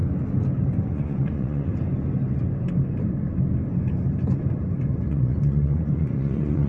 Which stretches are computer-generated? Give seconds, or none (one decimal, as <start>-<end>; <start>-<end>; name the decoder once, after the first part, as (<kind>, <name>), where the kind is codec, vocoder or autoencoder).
0.9-1.7 (vocoder, Vocos); 5.1-6.7